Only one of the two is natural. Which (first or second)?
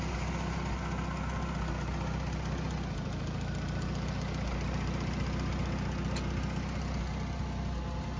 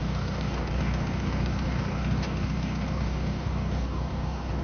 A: first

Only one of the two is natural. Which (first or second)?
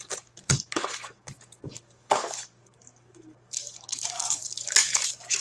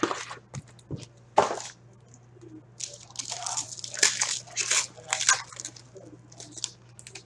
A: second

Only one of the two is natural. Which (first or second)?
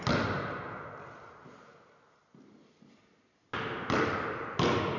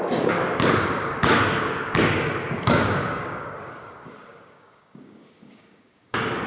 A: first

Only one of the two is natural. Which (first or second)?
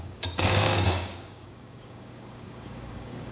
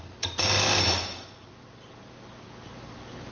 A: second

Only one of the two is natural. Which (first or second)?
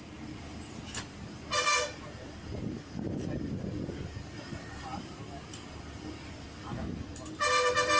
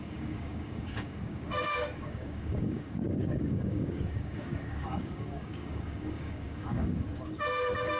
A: first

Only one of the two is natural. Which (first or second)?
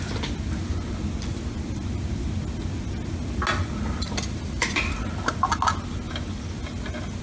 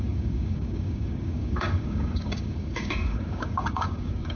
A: first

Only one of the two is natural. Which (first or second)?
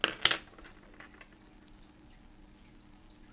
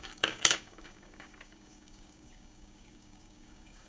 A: first